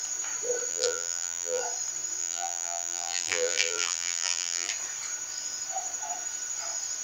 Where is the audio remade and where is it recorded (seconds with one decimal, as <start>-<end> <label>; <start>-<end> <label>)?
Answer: 0.0-0.7 recorded; 0.7-1.6 remade; 1.6-2.2 recorded; 2.2-4.7 remade; 4.7-7.0 recorded